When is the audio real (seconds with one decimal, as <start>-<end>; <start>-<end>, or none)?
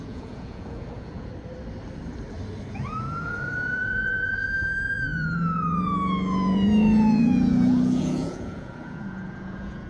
1.3-2.7